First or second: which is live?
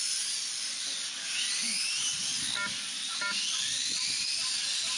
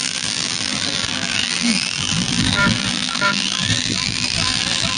first